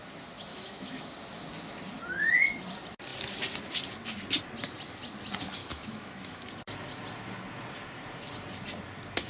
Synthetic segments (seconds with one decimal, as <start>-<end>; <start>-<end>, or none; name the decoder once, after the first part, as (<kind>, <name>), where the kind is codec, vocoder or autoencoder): 0.5-1.0 (autoencoder, DAC-VAE); 5.6-6.5